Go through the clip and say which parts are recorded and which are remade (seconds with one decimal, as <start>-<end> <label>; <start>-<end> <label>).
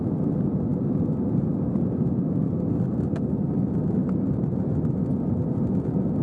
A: 0.0-4.0 recorded; 4.0-4.7 remade; 4.7-6.2 recorded